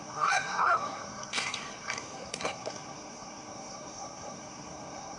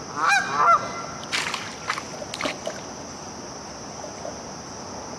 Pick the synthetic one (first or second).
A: first